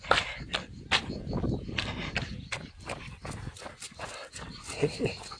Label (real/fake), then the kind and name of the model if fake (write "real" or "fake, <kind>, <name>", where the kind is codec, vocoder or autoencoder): real